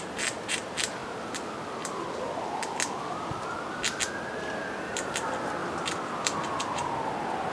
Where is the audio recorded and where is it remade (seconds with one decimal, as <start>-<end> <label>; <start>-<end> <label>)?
0.0-1.0 remade; 1.0-4.7 recorded; 4.7-7.5 remade